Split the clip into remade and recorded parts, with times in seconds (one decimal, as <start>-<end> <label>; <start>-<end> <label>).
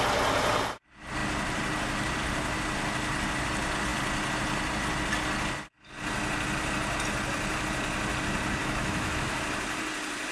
0.0-8.6 recorded; 8.6-9.4 remade; 9.4-10.3 recorded